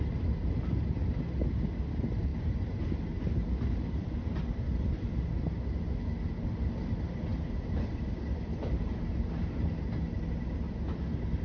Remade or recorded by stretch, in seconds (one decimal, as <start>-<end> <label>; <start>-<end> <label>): 0.0-4.0 recorded; 4.0-5.3 remade; 5.3-7.3 recorded; 7.3-9.1 remade; 9.1-11.4 recorded